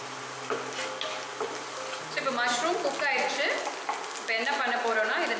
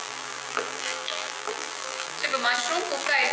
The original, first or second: first